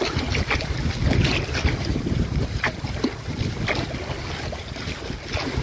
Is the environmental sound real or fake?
real